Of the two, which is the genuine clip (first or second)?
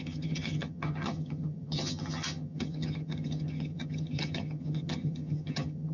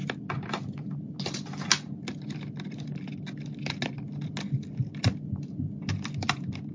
second